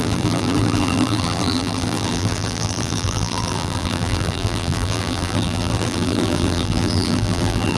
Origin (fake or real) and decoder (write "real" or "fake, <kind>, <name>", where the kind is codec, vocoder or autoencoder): fake, vocoder, BigVGAN v2